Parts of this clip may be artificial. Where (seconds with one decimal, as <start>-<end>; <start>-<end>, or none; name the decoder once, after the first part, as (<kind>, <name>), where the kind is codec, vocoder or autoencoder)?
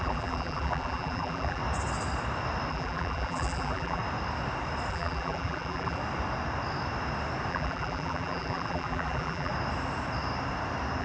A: 0.0-1.6 (vocoder, BigVGAN v2); 2.7-4.0; 4.9-6.0; 7.5-9.5